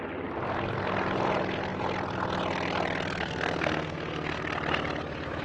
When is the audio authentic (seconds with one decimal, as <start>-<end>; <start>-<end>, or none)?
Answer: 0.0-3.2; 4.4-5.4